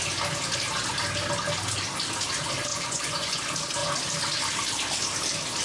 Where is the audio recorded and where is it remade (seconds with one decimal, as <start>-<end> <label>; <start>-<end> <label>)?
0.0-2.7 recorded; 2.7-3.4 remade; 3.4-5.6 recorded